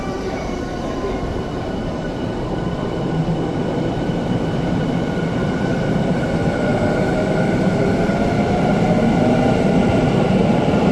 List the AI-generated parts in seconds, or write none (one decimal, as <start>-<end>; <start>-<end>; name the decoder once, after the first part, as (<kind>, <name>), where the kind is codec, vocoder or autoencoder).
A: 0.0-3.2 (vocoder, BigVGAN v2); 4.1-6.7; 9.3-10.9